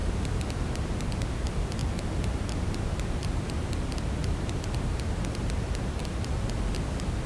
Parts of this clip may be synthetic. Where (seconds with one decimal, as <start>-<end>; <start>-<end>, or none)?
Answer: 0.0-1.2; 1.8-3.7; 4.2-6.0